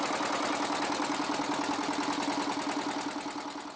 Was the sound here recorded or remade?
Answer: recorded